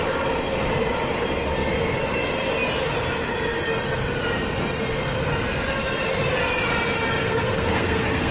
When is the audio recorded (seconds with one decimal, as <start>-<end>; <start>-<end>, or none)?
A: 0.0-7.2